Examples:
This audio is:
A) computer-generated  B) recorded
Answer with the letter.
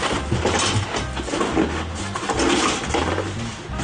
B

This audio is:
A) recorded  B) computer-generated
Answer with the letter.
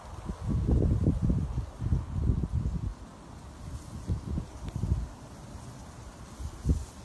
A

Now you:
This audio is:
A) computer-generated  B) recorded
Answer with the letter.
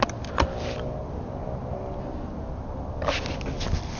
B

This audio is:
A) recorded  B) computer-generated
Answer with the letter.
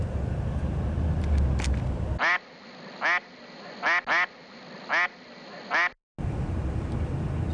A